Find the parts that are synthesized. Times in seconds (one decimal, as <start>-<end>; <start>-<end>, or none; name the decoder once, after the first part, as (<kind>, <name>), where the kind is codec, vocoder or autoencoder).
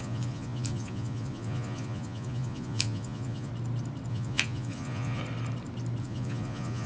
0.0-3.5 (vocoder, Vocos); 4.1-5.2; 6.0-6.9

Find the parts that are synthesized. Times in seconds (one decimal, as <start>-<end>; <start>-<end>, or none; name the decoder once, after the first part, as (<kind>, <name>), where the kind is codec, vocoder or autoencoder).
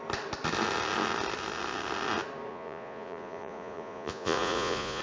2.5-5.0 (vocoder, Vocos)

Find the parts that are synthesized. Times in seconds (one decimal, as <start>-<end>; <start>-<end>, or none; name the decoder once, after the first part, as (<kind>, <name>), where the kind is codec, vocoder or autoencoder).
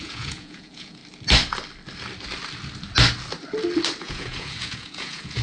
0.0-1.0 (vocoder, Vocos); 4.0-5.4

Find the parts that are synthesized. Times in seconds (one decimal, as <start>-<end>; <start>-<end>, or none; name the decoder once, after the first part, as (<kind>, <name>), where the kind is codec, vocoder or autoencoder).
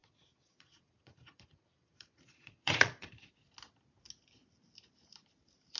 0.0-3.1 (vocoder, Vocos)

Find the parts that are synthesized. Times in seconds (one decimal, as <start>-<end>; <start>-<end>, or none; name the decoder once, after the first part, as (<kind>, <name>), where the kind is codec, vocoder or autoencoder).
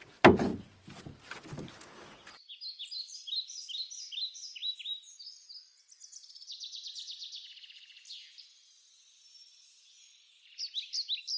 none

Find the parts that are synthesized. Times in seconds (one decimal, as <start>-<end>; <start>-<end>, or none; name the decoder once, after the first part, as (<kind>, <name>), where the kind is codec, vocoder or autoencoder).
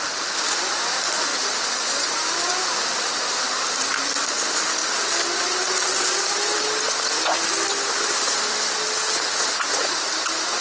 none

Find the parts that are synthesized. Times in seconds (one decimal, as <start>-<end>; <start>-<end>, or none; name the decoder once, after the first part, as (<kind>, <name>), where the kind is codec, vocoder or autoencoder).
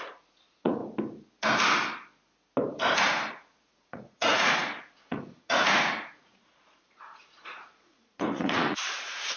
0.0-0.8 (vocoder, Vocos); 3.3-9.4